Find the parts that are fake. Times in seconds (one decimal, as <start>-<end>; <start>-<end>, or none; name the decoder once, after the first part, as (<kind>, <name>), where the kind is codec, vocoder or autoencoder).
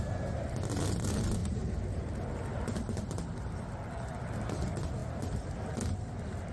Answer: 1.4-4.3 (vocoder, BigVGAN v2)